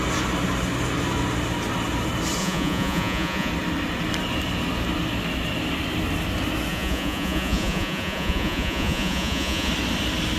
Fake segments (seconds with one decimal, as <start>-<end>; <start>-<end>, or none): 2.4-3.5; 6.7-9.7